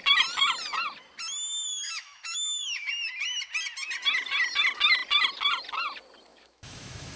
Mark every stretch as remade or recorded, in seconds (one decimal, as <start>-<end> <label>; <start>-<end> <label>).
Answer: 0.0-1.7 recorded; 1.7-2.9 remade; 2.9-6.3 recorded; 6.3-7.2 remade